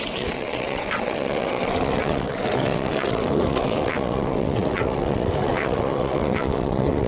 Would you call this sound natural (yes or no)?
no